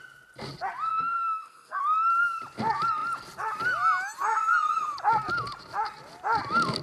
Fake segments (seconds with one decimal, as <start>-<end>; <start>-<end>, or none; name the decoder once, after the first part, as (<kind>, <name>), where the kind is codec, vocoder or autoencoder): 0.9-1.8 (codec, SNAC)